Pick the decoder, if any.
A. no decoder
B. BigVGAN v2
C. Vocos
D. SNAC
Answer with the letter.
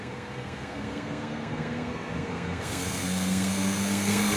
D